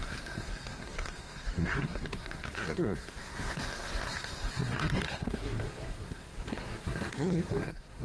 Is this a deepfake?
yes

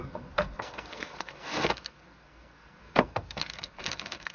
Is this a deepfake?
yes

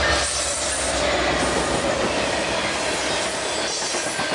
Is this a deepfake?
no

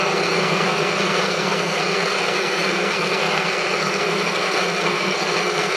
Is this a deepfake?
yes